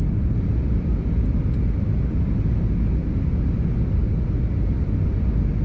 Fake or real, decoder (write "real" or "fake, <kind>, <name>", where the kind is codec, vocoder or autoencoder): real